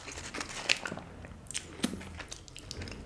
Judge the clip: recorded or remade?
recorded